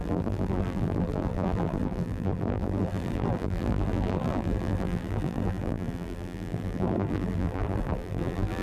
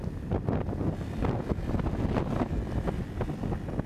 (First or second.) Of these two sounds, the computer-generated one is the first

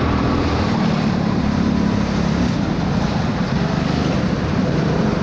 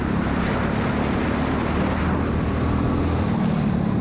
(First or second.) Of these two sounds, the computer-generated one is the first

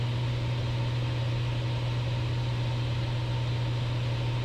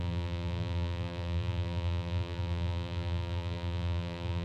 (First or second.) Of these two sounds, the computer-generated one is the second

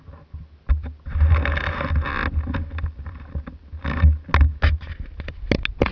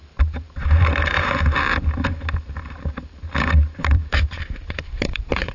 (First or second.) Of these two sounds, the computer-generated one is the second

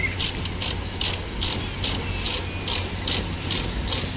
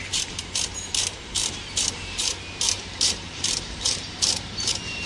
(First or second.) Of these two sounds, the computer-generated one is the second